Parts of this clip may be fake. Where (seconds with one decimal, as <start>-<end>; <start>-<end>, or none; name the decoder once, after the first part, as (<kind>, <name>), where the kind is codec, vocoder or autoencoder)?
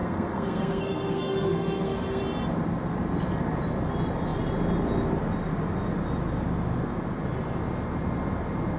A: 0.0-2.2 (codec, SNAC)